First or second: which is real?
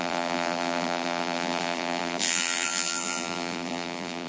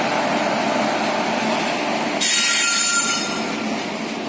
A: second